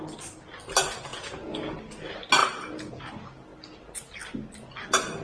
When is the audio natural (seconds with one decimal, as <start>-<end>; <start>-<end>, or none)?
0.0-1.1; 1.7-2.4; 3.0-5.2